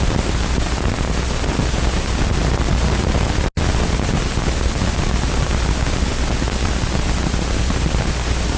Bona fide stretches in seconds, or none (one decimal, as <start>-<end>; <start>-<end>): 0.0-8.6